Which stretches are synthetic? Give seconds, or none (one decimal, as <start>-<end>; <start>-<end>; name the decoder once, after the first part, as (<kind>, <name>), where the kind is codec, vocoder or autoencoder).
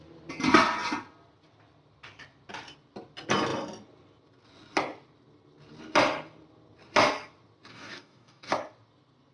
7.7-8.5 (codec, DAC)